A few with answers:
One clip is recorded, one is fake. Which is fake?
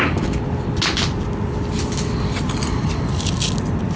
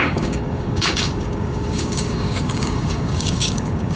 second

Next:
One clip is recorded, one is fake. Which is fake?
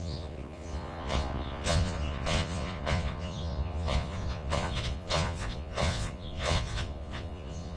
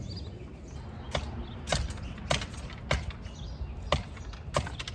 first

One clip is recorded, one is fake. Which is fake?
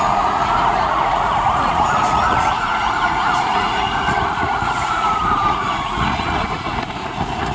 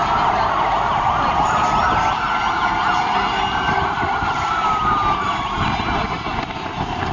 first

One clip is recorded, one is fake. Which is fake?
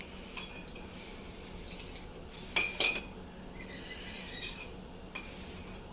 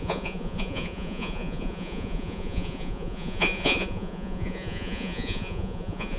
second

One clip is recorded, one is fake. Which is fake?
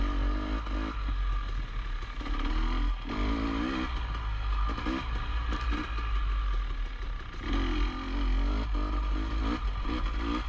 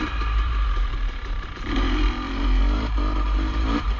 second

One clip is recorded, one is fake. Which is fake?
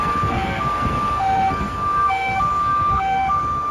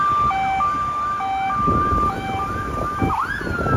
first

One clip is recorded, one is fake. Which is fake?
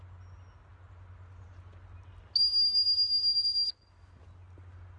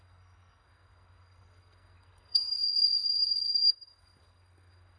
second